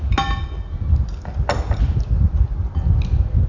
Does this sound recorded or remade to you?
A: recorded